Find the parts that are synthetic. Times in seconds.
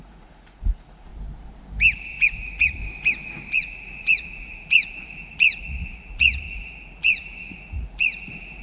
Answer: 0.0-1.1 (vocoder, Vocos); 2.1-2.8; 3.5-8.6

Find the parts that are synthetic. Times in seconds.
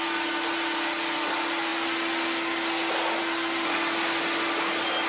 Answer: none